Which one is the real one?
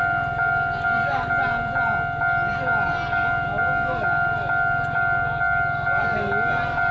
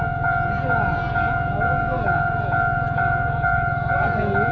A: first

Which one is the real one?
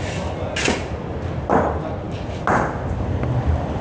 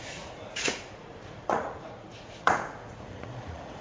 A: first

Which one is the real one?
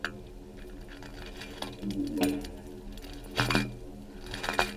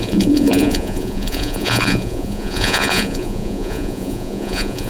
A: first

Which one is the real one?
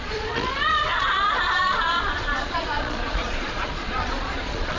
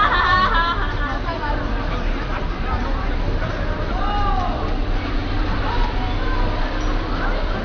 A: second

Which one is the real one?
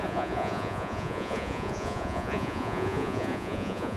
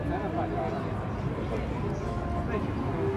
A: second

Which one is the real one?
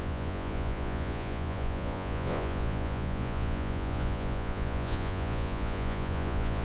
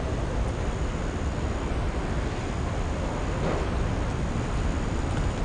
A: second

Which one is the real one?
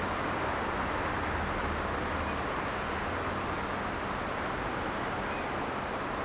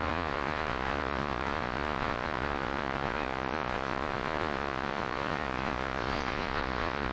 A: first